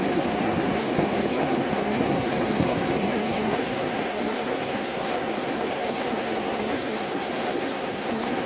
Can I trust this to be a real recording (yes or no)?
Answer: no